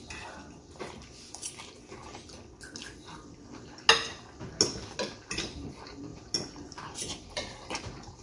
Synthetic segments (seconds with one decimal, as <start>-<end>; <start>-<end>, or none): 0.0-2.0; 5.3-6.1; 6.9-8.2